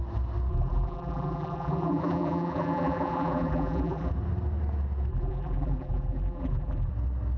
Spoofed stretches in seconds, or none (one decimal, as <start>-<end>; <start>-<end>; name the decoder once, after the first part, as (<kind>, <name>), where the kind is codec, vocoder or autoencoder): 0.5-4.1 (vocoder, BigVGAN v2); 5.1-6.9